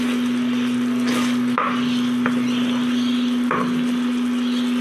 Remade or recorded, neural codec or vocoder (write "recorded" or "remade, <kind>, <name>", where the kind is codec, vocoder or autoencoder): recorded